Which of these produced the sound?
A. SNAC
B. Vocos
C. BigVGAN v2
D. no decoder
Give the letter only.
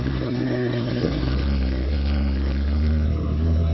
A